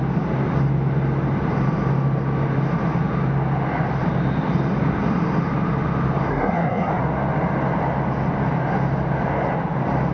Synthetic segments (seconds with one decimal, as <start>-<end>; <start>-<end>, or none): 6.3-7.0